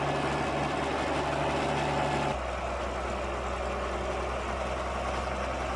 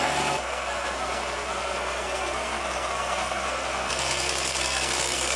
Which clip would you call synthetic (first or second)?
second